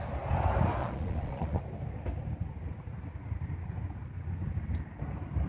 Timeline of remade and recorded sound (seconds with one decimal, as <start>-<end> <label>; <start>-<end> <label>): 0.0-0.8 recorded; 0.8-1.6 remade; 1.6-5.5 recorded